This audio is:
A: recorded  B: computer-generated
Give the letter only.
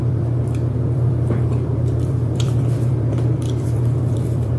B